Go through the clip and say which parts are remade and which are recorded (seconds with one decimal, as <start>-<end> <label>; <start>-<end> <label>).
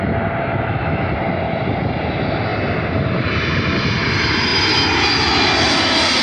0.0-0.5 recorded; 0.5-1.1 remade; 1.1-6.2 recorded